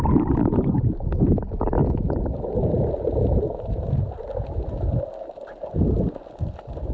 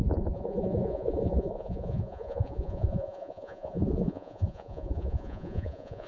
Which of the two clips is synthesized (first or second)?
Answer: second